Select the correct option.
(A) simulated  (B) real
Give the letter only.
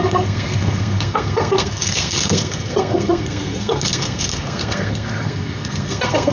A